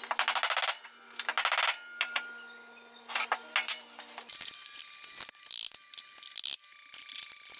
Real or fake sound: real